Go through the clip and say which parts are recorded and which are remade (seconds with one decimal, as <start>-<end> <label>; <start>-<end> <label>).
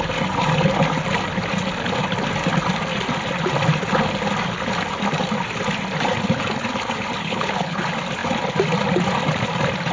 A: 0.0-7.2 recorded; 7.2-7.8 remade; 7.8-9.9 recorded